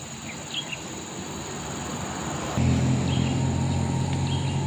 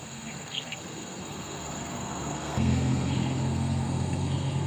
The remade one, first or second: second